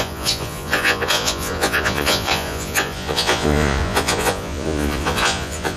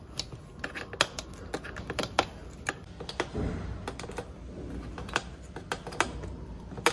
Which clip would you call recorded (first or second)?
second